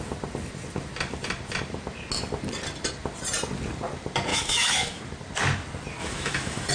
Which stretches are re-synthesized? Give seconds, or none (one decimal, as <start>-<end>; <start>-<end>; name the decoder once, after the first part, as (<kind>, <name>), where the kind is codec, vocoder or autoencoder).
4.3-5.0 (autoencoder, DAC-VAE); 6.0-6.7